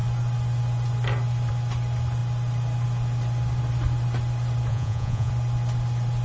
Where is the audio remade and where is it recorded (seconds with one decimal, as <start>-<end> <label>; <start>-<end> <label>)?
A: 0.0-4.7 recorded; 4.7-5.3 remade; 5.3-6.2 recorded

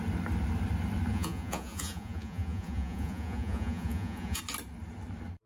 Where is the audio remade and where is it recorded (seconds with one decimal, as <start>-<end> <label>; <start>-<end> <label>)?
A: 0.0-1.1 recorded; 1.1-4.4 remade; 4.4-5.5 recorded